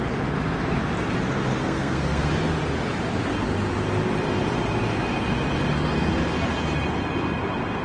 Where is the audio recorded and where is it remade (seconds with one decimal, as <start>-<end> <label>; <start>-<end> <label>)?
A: 0.0-1.6 recorded; 1.6-2.3 remade; 2.3-7.8 recorded

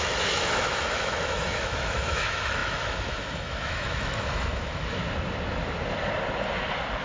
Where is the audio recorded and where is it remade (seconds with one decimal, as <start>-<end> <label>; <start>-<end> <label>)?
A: 0.0-5.0 remade; 5.0-7.0 recorded

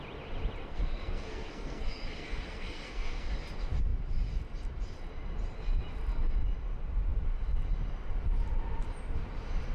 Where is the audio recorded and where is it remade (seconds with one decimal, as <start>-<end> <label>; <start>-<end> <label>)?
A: 0.0-0.6 recorded; 0.6-3.3 remade; 3.3-9.7 recorded

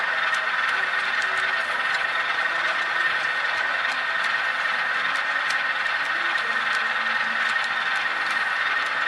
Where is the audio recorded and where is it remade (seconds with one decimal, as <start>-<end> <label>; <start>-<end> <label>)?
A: 0.0-1.6 recorded; 1.6-3.4 remade; 3.4-9.1 recorded

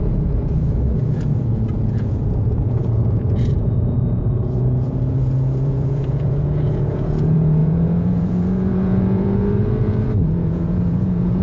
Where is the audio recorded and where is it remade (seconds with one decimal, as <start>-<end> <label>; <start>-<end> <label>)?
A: 0.0-11.4 remade

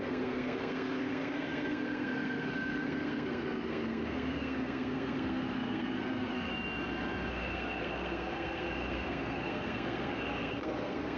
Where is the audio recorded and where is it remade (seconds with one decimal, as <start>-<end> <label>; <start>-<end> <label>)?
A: 0.0-6.5 remade; 6.5-7.3 recorded; 7.3-11.2 remade

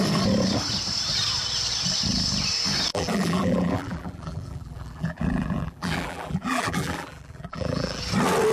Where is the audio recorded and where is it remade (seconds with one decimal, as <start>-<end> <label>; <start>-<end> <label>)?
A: 0.0-2.9 recorded; 2.9-8.0 remade; 8.0-8.5 recorded